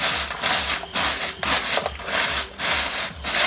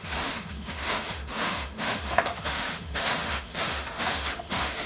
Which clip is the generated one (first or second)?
second